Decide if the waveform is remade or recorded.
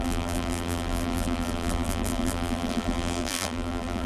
remade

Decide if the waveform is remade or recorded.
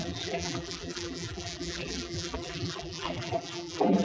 remade